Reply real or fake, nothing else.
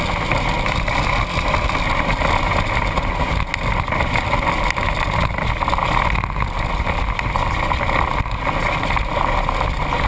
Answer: real